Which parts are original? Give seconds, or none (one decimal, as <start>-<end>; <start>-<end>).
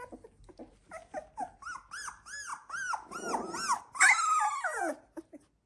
0.0-5.7